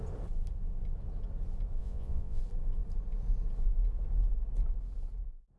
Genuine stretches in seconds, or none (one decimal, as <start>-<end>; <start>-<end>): 0.0-1.8; 2.4-5.6